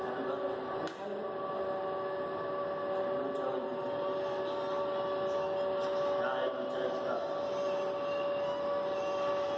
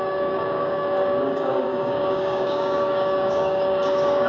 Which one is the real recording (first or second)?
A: first